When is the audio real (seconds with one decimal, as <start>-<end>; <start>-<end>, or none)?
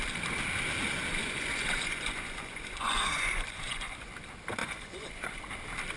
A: 0.0-1.2; 4.1-4.6; 5.4-6.0